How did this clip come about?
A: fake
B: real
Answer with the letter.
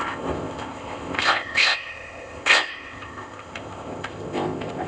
A